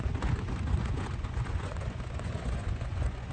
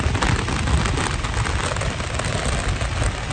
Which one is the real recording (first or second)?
second